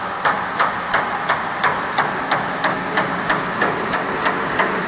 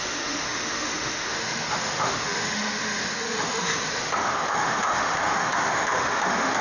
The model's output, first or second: second